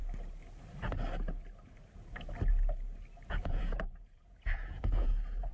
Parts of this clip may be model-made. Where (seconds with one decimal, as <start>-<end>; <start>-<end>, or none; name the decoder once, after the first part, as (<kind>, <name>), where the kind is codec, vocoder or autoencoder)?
3.3-5.5 (vocoder, Vocos)